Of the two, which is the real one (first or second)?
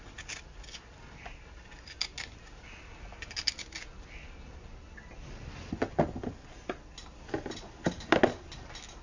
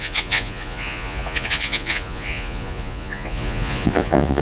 first